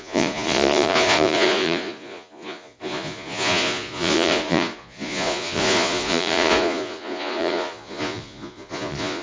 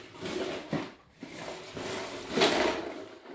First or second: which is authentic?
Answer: second